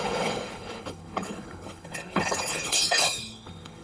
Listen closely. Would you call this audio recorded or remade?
remade